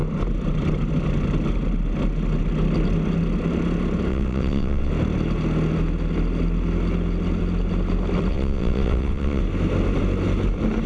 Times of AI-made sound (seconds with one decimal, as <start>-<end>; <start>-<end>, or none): 4.1-4.9; 8.3-9.4